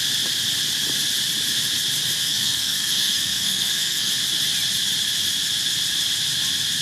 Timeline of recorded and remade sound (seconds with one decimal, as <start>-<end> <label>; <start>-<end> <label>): 0.0-2.2 recorded; 2.2-4.1 remade; 4.1-6.8 recorded